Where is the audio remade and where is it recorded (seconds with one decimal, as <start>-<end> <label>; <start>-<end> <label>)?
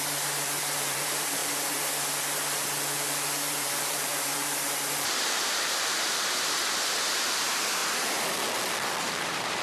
0.0-1.4 remade; 1.4-3.5 recorded; 3.5-7.8 remade; 7.8-9.0 recorded; 9.0-9.6 remade